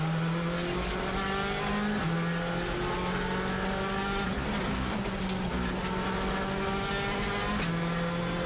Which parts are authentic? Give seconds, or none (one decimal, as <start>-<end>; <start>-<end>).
0.0-8.5

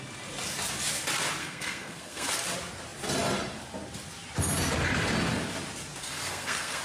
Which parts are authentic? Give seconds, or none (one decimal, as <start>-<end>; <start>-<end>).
0.0-1.4; 2.3-6.0

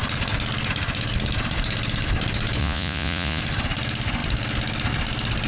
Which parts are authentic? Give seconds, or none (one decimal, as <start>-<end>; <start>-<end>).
0.0-2.6; 3.4-5.5

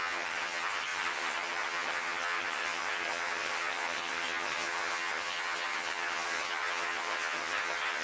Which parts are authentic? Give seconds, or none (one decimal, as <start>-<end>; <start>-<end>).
none